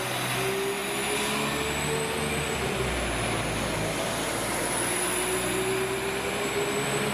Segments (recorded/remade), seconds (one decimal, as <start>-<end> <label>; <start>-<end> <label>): 0.0-7.1 recorded